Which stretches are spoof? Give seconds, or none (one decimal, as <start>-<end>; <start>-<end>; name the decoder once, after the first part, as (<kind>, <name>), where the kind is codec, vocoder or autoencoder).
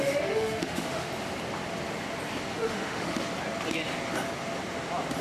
0.0-1.1 (autoencoder, DAC-VAE); 2.5-3.2